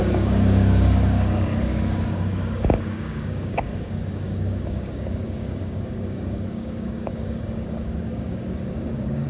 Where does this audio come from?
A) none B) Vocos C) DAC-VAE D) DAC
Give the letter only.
D